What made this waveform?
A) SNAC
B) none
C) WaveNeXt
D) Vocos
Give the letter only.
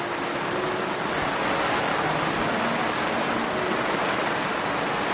B